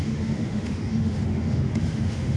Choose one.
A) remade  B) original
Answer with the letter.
A